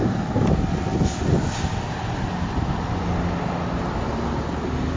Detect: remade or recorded recorded